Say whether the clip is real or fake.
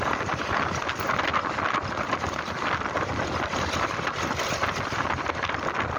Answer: real